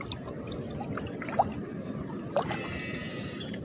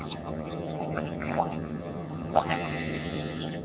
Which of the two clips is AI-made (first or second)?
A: second